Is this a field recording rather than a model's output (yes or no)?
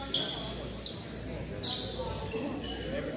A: yes